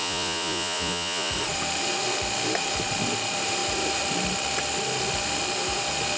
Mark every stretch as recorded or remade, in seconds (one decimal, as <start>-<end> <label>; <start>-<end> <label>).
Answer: 0.0-1.3 remade; 1.3-6.2 recorded

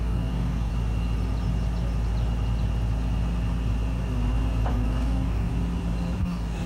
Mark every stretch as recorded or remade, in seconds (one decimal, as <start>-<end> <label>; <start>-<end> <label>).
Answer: 0.0-0.7 remade; 0.7-4.7 recorded; 4.7-5.5 remade; 5.5-6.2 recorded; 6.2-6.7 remade

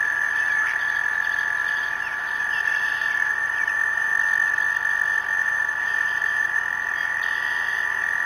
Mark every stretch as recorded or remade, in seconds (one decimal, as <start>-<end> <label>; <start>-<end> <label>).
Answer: 0.0-4.1 remade; 4.1-5.4 recorded; 5.4-8.3 remade

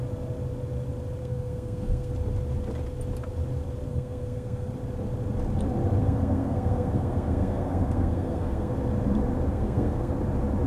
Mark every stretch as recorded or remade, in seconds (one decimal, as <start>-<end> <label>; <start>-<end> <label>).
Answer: 0.0-1.2 recorded; 1.2-2.1 remade; 2.1-3.9 recorded; 3.9-4.7 remade; 4.7-6.0 recorded; 6.0-8.7 remade; 8.7-9.5 recorded; 9.5-10.1 remade; 10.1-10.7 recorded

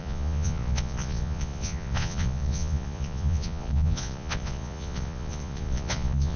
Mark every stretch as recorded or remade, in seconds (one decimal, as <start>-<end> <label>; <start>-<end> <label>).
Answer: 0.0-6.4 remade